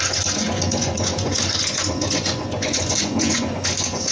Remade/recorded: remade